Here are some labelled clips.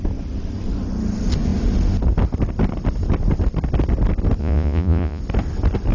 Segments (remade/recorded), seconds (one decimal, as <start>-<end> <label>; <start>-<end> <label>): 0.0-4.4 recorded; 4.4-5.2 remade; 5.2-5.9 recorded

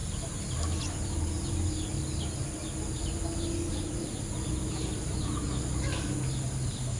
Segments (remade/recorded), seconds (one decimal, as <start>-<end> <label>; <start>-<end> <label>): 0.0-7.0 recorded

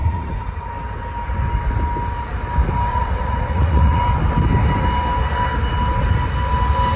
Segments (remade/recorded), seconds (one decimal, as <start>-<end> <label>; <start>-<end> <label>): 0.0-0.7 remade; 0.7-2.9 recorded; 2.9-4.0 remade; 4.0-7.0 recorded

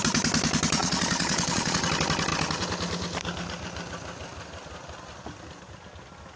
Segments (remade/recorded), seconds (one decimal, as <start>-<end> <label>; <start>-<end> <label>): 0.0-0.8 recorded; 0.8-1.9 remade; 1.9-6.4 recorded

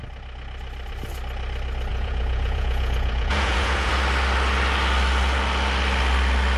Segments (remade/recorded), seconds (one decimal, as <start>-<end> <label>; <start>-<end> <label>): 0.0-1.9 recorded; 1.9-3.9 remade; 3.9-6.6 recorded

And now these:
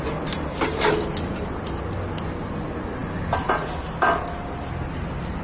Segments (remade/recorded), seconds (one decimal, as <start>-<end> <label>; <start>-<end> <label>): 0.0-5.4 recorded